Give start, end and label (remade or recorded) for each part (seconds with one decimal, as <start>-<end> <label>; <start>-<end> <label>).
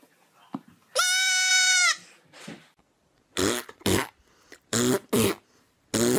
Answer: 0.0-1.5 recorded; 1.5-4.9 remade; 4.9-6.2 recorded